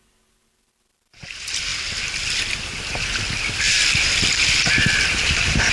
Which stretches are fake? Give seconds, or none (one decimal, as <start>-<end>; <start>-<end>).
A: none